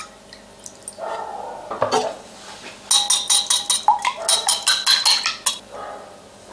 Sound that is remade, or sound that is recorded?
recorded